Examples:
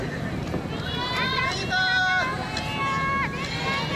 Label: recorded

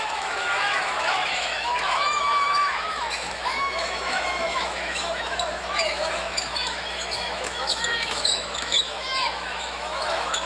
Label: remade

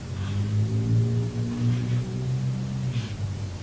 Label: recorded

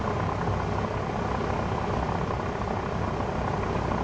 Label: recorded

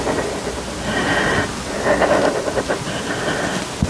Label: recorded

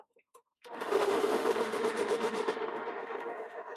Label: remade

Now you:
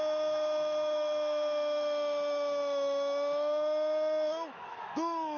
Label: remade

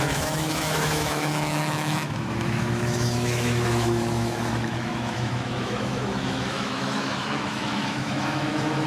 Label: remade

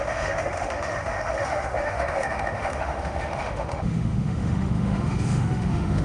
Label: remade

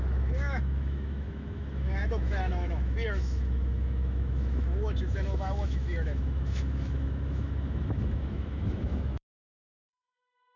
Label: remade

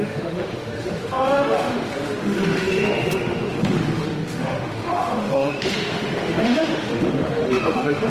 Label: remade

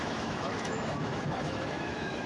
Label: remade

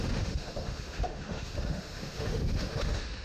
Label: remade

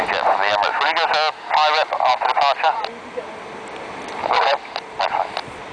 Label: recorded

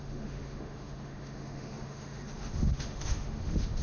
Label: remade